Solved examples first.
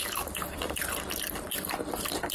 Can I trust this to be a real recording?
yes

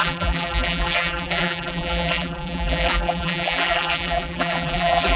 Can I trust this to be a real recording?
no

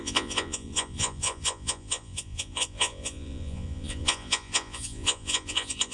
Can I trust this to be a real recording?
no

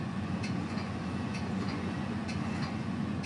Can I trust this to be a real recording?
no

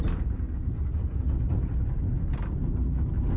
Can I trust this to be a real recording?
yes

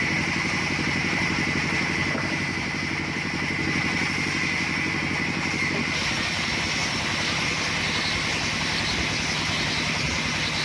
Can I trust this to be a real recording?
yes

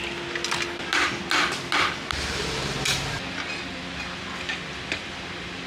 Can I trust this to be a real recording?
yes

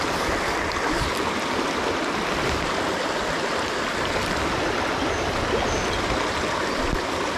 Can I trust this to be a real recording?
yes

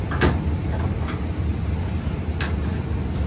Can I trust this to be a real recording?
yes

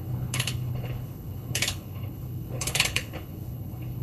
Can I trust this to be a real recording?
no